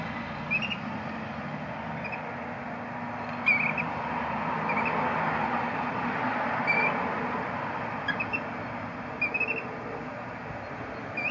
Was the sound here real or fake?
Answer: real